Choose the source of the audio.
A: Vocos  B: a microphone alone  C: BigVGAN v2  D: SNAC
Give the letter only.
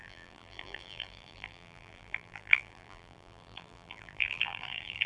C